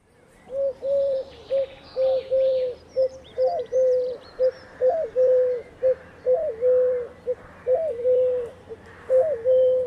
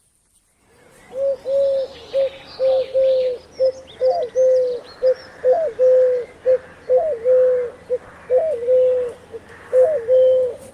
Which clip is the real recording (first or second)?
second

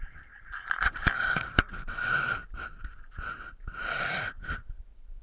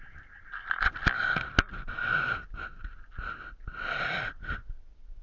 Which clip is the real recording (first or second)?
second